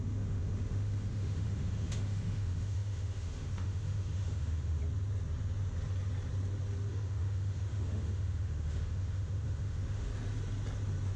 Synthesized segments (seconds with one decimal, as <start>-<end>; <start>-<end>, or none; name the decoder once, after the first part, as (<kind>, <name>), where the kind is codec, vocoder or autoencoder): 0.0-4.8 (autoencoder, DAC-VAE); 6.9-10.1